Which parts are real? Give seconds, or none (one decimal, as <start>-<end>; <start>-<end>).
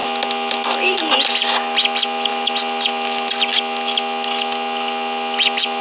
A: 0.0-5.8